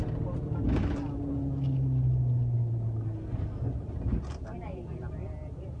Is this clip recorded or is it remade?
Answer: recorded